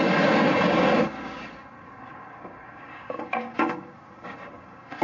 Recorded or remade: remade